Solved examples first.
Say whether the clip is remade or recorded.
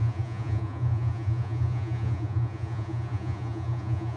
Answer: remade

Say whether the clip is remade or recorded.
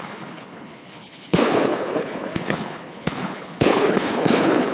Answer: remade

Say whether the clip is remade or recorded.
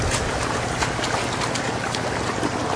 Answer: recorded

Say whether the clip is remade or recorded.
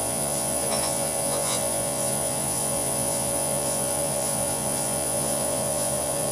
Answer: remade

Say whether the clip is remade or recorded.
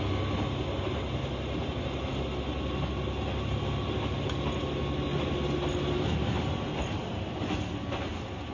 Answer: recorded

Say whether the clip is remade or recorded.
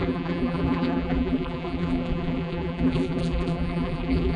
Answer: remade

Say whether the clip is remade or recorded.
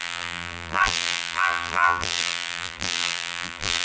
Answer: remade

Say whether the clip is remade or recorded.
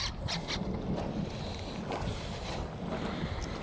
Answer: recorded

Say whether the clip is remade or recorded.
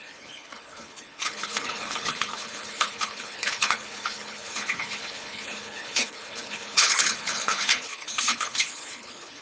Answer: remade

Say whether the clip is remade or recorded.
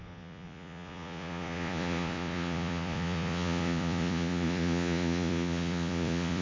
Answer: remade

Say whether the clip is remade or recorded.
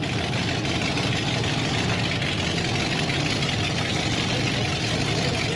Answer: recorded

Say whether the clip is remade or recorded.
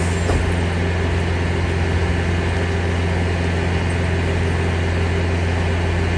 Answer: recorded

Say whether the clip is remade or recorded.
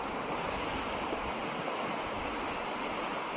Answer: recorded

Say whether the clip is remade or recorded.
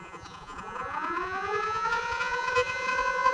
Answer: remade